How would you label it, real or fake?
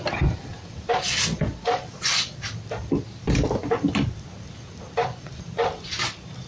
fake